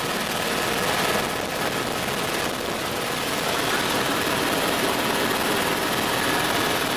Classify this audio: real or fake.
real